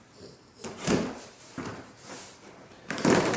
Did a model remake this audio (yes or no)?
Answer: yes